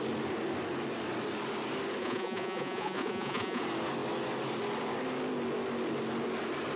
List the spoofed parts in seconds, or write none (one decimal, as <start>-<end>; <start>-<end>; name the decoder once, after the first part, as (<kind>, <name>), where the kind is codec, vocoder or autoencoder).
2.0-3.6 (vocoder, Vocos)